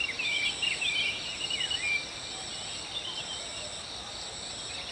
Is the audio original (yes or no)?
yes